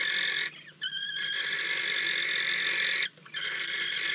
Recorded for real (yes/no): yes